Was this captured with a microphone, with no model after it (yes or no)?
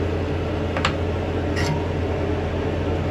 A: yes